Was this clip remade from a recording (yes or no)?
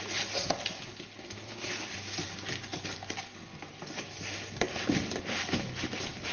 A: no